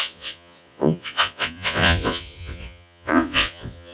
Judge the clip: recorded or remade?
remade